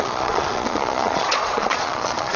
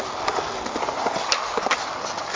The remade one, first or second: first